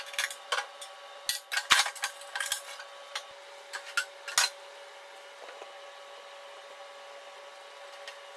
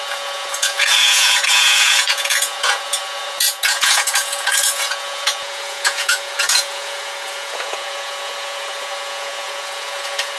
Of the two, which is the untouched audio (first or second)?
first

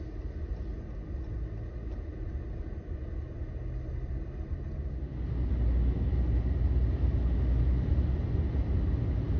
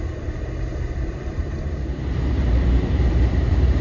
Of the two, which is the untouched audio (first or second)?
first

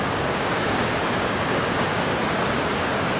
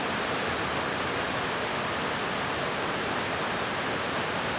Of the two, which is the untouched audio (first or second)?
second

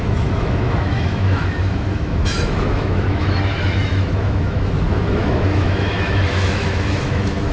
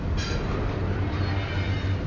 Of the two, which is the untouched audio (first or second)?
second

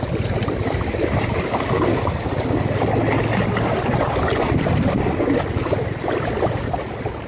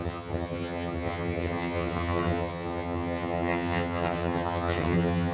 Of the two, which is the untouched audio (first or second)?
first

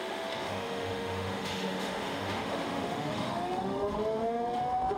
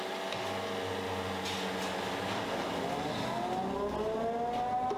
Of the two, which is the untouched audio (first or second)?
second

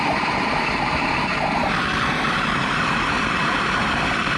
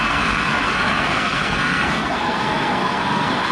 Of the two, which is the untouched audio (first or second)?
first